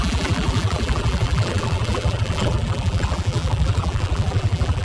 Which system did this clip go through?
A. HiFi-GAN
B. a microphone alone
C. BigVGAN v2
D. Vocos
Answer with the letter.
C